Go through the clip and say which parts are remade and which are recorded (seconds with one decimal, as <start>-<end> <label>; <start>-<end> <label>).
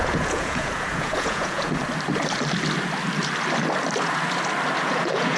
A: 0.0-1.8 remade; 1.8-4.8 recorded; 4.8-5.4 remade